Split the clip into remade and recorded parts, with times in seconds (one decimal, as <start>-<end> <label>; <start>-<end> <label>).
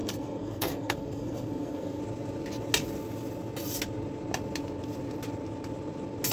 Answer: 0.0-2.0 remade; 2.0-6.3 recorded